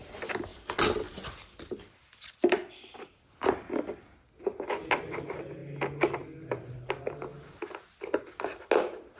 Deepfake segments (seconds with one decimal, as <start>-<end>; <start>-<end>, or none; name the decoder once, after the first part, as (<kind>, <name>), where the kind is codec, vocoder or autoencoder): none